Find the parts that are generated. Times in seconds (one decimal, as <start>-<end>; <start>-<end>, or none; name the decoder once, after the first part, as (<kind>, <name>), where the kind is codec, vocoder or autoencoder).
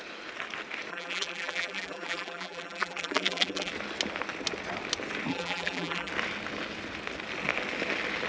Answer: 0.9-3.7 (vocoder, BigVGAN v2); 5.3-6.1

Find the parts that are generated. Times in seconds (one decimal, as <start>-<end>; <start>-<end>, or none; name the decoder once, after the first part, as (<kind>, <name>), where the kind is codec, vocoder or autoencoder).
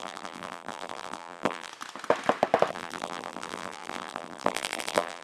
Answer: 0.0-1.7 (vocoder, BigVGAN v2); 2.7-5.2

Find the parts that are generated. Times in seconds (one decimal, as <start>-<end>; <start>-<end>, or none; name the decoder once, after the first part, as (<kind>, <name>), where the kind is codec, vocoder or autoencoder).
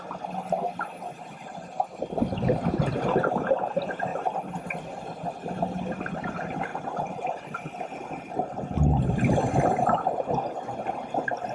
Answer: 4.1-4.9 (vocoder, BigVGAN v2); 6.7-8.3